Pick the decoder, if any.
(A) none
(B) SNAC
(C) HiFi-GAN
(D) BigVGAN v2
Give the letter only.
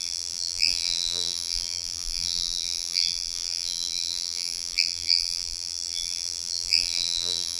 D